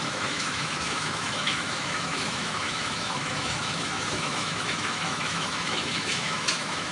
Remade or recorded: remade